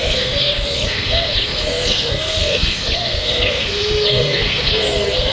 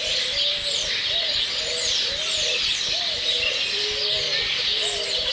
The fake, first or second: first